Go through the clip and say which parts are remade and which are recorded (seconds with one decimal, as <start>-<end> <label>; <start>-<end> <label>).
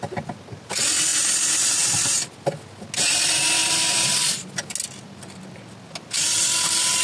0.0-1.1 recorded; 1.1-2.2 remade; 2.2-3.6 recorded; 3.6-4.2 remade; 4.2-7.0 recorded